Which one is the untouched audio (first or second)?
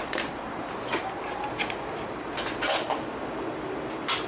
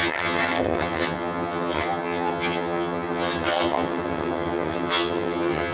first